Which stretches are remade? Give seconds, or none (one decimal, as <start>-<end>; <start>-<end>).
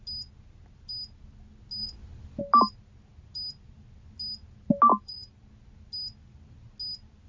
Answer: 1.8-2.4; 4.9-5.5